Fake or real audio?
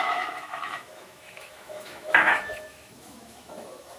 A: fake